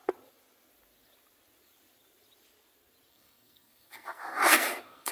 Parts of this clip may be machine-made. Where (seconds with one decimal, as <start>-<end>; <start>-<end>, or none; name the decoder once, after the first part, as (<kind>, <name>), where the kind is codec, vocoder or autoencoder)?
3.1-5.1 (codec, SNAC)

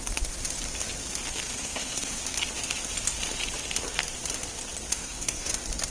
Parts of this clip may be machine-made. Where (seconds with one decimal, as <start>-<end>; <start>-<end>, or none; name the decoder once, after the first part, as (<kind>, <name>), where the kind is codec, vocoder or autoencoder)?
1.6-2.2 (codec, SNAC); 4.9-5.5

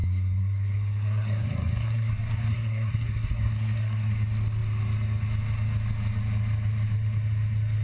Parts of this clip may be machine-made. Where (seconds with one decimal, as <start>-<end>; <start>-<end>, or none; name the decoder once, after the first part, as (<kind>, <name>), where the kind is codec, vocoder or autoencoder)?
0.0-2.1 (codec, SNAC); 2.5-4.1